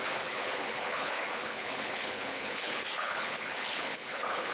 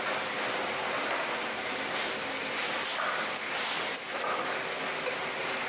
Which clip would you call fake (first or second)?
first